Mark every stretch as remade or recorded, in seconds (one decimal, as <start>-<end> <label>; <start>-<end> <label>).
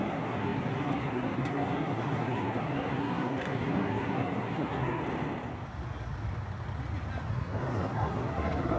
0.0-5.0 remade; 5.0-7.3 recorded; 7.3-8.8 remade